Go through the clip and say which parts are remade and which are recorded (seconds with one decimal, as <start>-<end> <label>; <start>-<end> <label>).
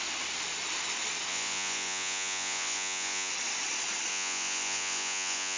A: 0.0-1.3 recorded; 1.3-3.3 remade; 3.3-4.1 recorded; 4.1-5.6 remade